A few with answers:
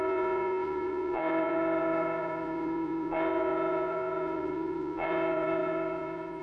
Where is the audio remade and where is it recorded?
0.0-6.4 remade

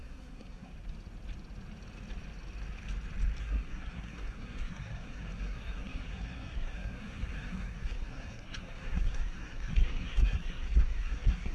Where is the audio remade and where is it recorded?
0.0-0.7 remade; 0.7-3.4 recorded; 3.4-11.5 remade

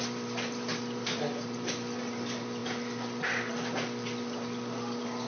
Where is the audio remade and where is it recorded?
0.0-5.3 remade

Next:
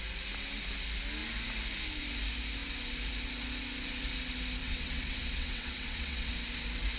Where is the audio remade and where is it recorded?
0.0-4.6 recorded; 4.6-6.3 remade; 6.3-7.0 recorded

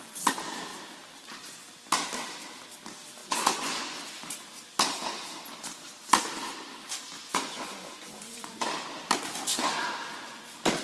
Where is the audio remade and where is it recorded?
0.0-3.2 recorded; 3.2-4.0 remade; 4.0-7.2 recorded; 7.2-8.7 remade; 8.7-9.5 recorded; 9.5-10.4 remade; 10.4-10.8 recorded

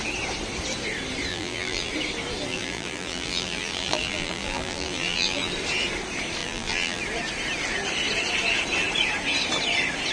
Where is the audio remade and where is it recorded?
0.0-1.3 recorded; 1.3-1.9 remade; 1.9-2.5 recorded; 2.5-5.5 remade; 5.5-6.4 recorded; 6.4-7.0 remade; 7.0-10.1 recorded

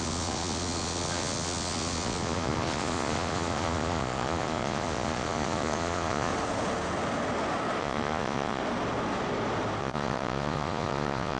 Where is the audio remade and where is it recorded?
0.0-6.3 remade; 6.3-7.8 recorded; 7.8-8.6 remade; 8.6-9.8 recorded; 9.8-11.4 remade